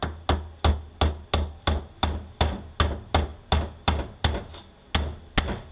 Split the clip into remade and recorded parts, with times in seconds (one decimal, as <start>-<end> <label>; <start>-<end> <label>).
0.0-5.7 recorded